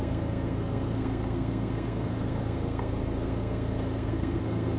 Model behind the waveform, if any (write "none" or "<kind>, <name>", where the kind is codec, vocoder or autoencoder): codec, SNAC